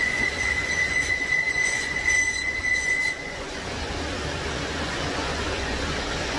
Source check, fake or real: fake